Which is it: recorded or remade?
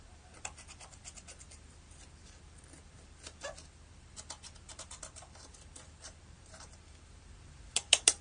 remade